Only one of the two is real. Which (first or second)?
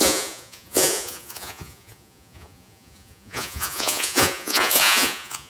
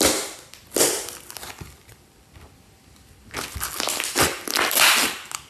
second